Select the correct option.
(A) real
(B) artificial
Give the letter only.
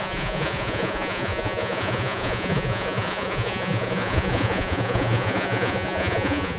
B